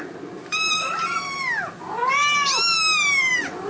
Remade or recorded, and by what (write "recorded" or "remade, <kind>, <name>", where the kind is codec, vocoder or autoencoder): recorded